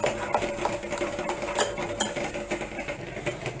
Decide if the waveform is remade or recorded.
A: recorded